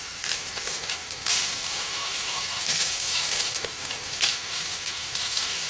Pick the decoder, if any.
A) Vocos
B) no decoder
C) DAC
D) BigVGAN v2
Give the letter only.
C